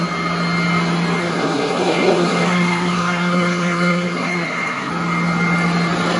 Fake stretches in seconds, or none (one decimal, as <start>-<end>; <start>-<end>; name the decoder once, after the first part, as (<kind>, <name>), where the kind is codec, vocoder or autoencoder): 1.2-4.9 (codec, SNAC)